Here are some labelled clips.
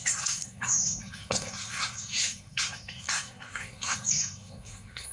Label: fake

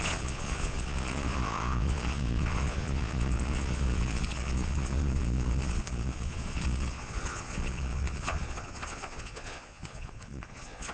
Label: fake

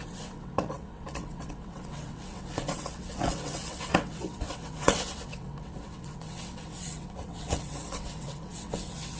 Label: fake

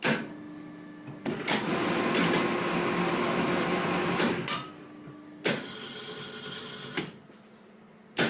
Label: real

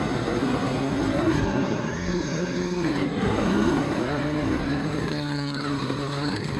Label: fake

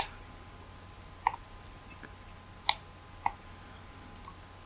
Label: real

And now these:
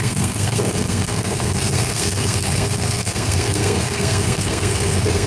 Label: fake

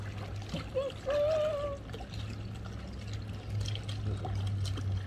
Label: real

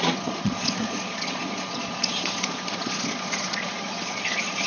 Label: fake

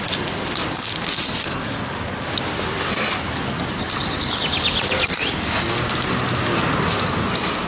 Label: real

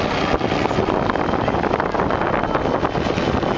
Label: real